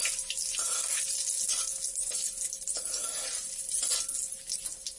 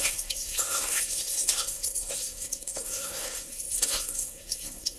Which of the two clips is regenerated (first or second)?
second